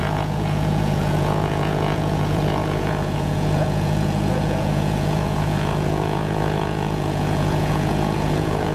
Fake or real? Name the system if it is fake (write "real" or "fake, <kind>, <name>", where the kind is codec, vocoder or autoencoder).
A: fake, vocoder, Vocos